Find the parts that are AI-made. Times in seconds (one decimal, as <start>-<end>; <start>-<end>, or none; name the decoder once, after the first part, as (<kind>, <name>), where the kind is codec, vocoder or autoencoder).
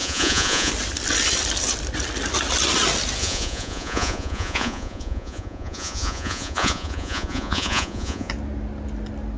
0.0-0.7 (vocoder, Vocos); 3.2-8.3